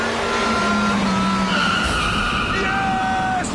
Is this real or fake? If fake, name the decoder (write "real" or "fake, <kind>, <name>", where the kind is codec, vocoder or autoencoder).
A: real